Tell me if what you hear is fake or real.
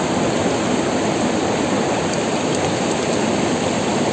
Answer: real